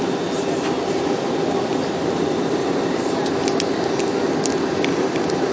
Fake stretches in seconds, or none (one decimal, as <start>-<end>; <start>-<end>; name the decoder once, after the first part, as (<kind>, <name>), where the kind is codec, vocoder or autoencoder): none